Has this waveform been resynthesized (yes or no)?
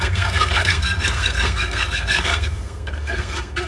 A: yes